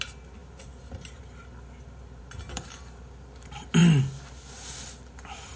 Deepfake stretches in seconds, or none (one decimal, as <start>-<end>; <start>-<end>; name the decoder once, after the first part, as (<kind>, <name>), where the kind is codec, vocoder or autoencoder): none